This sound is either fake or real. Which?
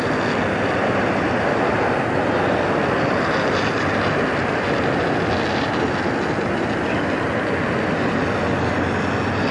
real